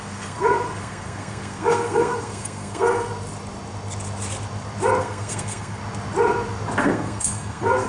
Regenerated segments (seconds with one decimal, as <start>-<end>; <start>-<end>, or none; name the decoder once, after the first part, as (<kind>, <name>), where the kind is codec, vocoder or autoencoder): 0.0-3.1 (codec, SNAC); 5.0-5.8; 6.8-7.9